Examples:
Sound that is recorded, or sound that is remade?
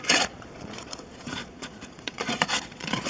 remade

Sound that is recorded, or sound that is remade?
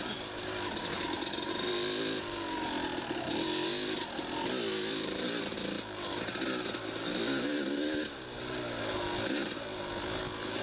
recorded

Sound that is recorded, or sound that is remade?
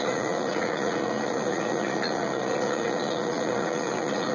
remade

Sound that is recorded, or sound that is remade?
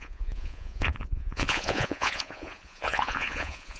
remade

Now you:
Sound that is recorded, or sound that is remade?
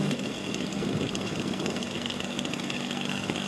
remade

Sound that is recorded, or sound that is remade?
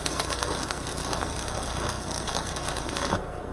remade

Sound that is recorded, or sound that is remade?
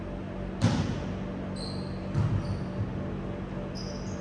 recorded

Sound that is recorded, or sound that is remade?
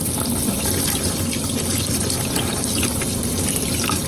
recorded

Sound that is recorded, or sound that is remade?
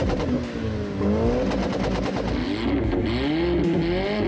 recorded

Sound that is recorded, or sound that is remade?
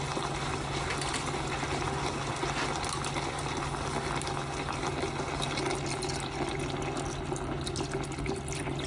recorded